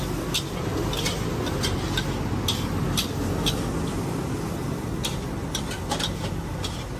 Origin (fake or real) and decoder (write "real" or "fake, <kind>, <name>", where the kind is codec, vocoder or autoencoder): real